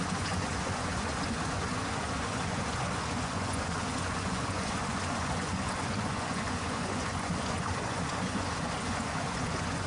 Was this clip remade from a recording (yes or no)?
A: yes